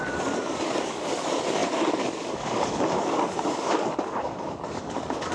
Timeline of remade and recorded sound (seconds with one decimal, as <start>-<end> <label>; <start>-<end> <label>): 0.0-5.3 remade

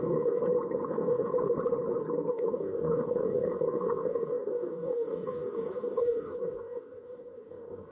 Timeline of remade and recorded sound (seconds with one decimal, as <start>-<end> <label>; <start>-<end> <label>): 0.0-0.4 remade; 0.4-0.9 recorded; 0.9-1.3 remade; 1.3-2.3 recorded; 2.3-7.9 remade